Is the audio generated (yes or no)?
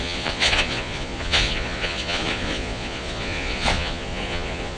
yes